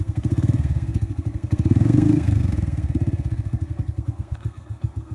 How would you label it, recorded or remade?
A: remade